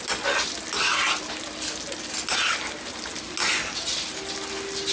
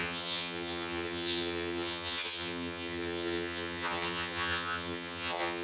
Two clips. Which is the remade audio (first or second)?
second